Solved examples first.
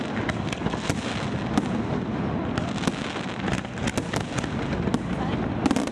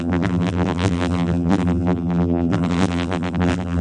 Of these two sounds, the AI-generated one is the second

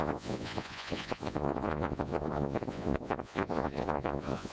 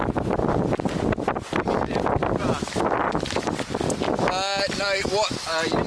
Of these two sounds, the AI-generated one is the first